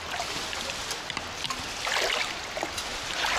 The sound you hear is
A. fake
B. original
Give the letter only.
B